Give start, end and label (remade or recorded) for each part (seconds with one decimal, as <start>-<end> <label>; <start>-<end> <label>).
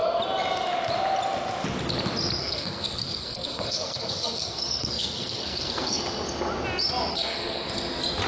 0.0-2.4 recorded; 2.4-6.0 remade; 6.0-7.1 recorded; 7.1-7.7 remade; 7.7-8.3 recorded